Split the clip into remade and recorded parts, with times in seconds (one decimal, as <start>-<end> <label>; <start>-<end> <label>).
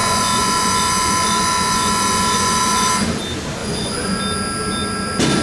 0.0-2.9 remade; 2.9-3.6 recorded; 3.6-4.2 remade; 4.2-5.4 recorded